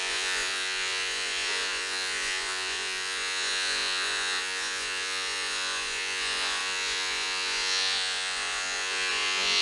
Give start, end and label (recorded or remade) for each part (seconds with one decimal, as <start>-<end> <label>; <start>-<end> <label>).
0.0-9.6 remade